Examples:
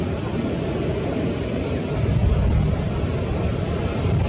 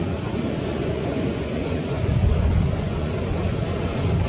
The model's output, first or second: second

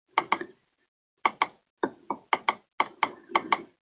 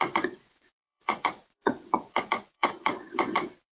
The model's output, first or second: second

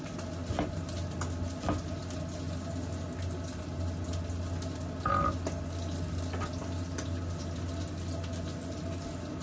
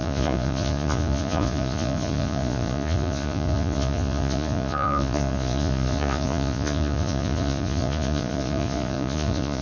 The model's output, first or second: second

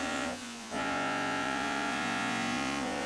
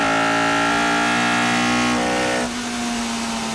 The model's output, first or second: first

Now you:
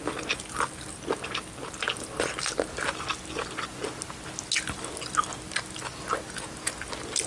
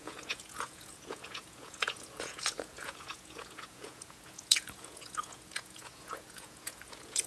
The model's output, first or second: second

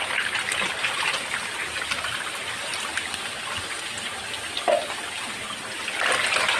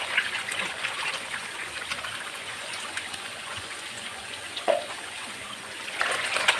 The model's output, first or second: second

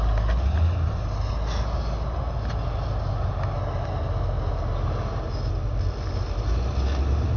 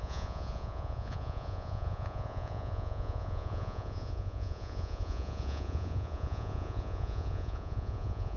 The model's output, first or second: second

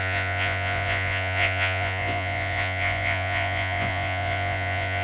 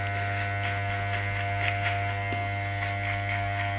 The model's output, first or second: first